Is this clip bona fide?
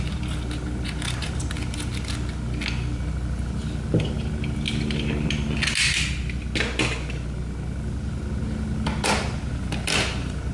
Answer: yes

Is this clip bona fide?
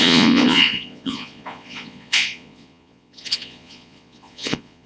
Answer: no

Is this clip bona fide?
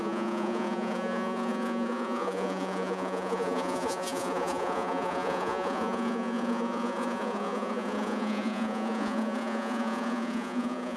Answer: no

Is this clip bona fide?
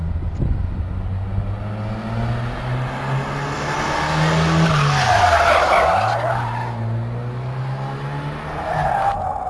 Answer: yes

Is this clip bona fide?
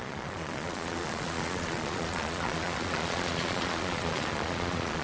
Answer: no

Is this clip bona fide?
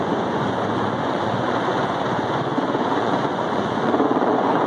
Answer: no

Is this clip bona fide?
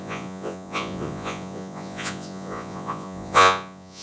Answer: no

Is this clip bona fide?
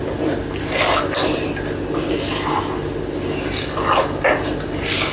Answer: yes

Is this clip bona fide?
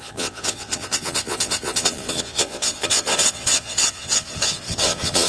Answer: no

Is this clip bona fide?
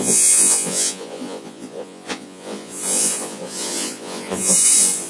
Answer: no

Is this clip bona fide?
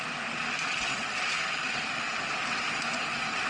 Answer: yes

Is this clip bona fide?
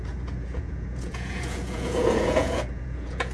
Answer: no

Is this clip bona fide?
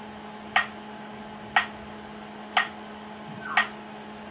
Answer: yes